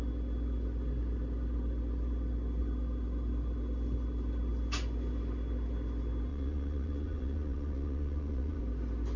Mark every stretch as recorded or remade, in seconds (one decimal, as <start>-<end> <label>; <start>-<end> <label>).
0.0-6.3 recorded; 6.3-8.6 remade; 8.6-9.2 recorded